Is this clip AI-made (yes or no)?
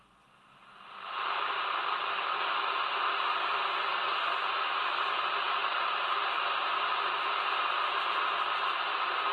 no